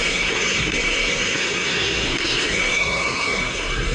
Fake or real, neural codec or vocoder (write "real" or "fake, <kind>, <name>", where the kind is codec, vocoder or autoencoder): fake, codec, SNAC